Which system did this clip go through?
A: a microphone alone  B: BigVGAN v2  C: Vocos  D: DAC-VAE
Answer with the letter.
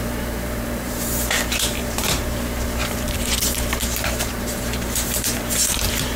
B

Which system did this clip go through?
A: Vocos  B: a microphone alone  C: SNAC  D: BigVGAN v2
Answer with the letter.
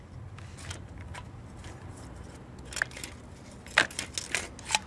B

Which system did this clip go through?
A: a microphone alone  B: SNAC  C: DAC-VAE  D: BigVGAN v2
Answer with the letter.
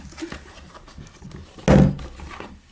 A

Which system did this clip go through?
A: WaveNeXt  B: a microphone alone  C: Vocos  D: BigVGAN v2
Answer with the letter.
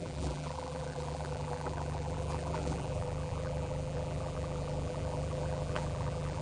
D